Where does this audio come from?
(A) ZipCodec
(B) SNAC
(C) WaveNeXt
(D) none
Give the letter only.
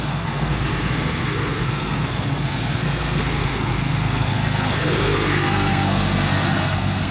B